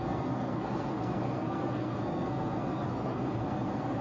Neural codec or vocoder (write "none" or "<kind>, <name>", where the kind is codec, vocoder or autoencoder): codec, SNAC